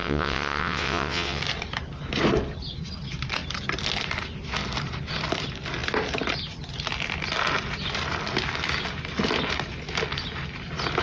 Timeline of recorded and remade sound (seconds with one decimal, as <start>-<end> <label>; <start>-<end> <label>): 0.0-1.4 remade; 1.4-11.0 recorded